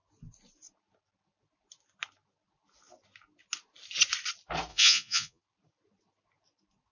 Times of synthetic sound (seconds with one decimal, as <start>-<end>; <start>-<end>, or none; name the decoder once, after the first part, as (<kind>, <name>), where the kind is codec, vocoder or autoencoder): 4.7-5.4 (vocoder, Vocos)